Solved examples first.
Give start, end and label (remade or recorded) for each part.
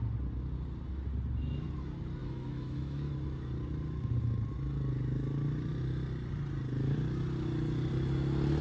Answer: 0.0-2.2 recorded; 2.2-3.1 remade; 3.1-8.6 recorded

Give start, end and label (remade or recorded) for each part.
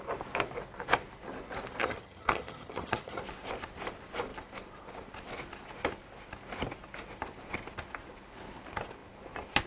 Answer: 0.0-1.8 recorded; 1.8-3.2 remade; 3.2-9.7 recorded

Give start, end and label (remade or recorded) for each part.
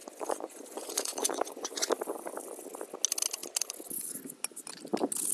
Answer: 0.0-1.9 remade; 1.9-5.3 recorded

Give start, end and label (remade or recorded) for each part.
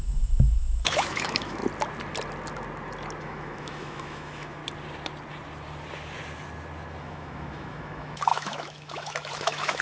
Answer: 0.0-1.6 remade; 1.6-3.2 recorded; 3.2-4.6 remade; 4.6-7.0 recorded; 7.0-9.8 remade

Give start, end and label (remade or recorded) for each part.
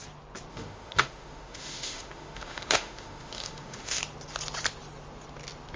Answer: 0.0-0.5 recorded; 0.5-4.0 remade; 4.0-5.8 recorded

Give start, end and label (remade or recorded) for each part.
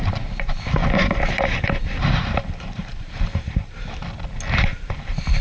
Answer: 0.0-0.8 recorded; 0.8-4.0 remade; 4.0-4.7 recorded; 4.7-5.4 remade